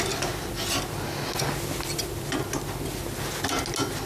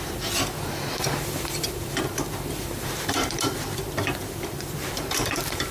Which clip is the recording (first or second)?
first